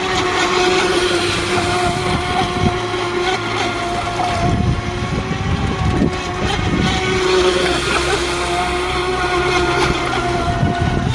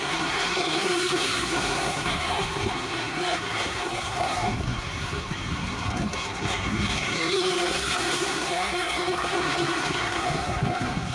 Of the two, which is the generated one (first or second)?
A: second